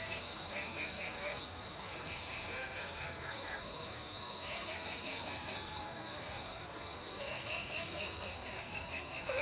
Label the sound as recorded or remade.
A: remade